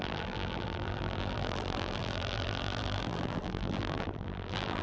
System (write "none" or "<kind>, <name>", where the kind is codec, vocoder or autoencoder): vocoder, BigVGAN v2